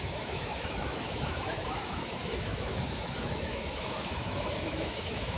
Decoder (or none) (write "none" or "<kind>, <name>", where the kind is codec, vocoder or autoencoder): autoencoder, DAC-VAE